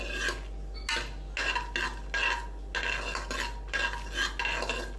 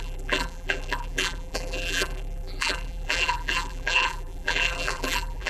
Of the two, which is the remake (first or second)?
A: second